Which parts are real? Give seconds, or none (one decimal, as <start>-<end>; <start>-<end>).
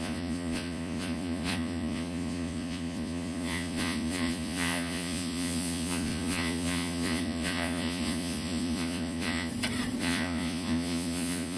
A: 9.5-10.0